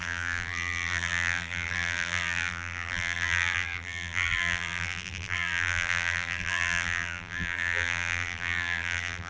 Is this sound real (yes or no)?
no